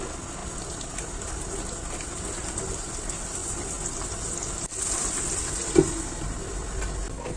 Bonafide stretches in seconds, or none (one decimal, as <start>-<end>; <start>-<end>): 0.0-7.4